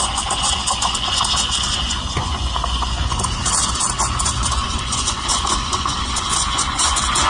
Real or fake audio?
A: fake